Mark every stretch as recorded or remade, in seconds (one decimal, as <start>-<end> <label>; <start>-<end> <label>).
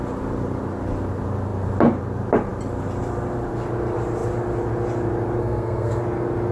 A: 0.0-5.4 recorded; 5.4-6.0 remade; 6.0-6.5 recorded